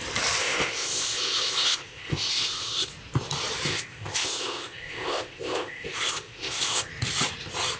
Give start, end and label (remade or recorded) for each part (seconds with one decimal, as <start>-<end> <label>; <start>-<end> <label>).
0.0-0.4 recorded; 0.4-2.9 remade; 2.9-3.7 recorded; 3.7-6.9 remade; 6.9-7.8 recorded